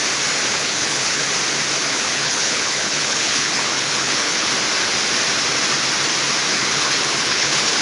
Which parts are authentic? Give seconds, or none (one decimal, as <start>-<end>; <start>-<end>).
0.0-0.5; 1.2-1.8; 4.5-6.5